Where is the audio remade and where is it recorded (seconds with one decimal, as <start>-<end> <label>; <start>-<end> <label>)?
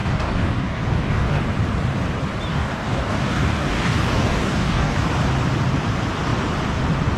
0.0-1.4 remade; 1.4-2.5 recorded; 2.5-5.1 remade; 5.1-7.2 recorded